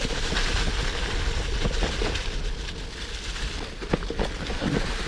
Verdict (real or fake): real